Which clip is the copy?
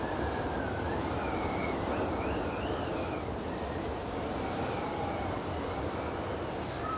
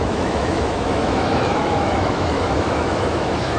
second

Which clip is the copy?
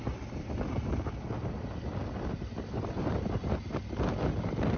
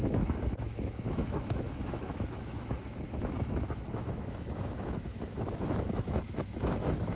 second